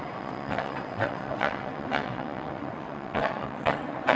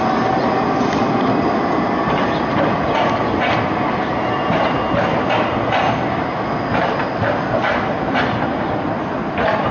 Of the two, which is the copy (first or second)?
first